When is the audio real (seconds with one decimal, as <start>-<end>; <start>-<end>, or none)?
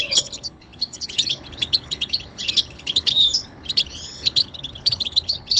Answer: none